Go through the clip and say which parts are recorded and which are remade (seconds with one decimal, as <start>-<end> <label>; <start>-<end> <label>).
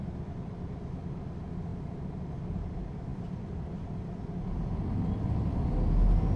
0.0-1.7 recorded; 1.7-2.2 remade; 2.2-6.4 recorded